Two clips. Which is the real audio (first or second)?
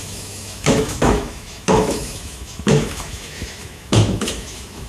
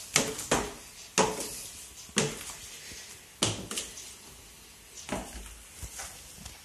second